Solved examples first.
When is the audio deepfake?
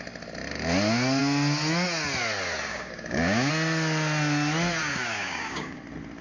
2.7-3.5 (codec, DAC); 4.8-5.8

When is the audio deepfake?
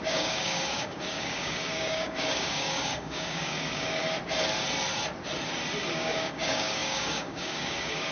0.0-4.0 (codec, DAC); 5.9-8.1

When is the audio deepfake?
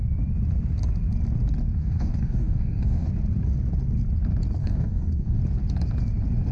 1.8-3.1 (codec, DAC); 4.6-5.4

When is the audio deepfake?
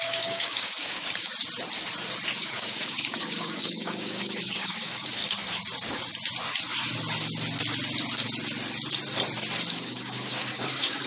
0.0-1.3 (codec, DAC); 2.4-5.2; 9.7-11.1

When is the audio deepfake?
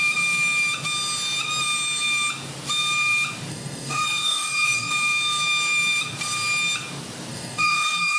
3.5-4.9 (codec, DAC); 7.3-8.2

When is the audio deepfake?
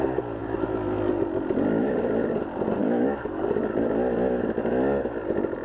2.8-3.5 (codec, DAC)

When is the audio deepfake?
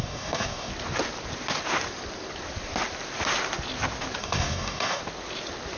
0.0-0.7 (codec, DAC); 4.2-5.0